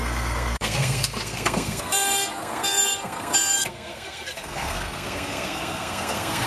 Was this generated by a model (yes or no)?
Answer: yes